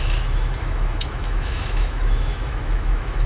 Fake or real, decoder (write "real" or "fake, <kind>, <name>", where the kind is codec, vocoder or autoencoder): fake, autoencoder, DAC-VAE